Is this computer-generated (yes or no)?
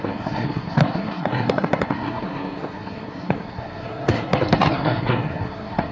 yes